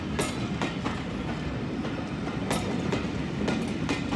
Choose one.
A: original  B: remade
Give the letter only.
A